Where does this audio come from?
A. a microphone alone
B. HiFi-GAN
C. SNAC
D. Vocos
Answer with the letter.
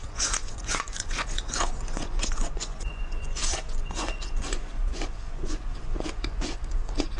D